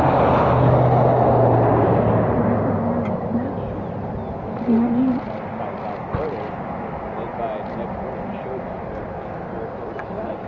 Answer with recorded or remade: recorded